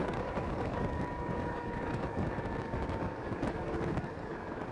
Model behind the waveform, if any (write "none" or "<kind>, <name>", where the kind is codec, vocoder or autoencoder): codec, DAC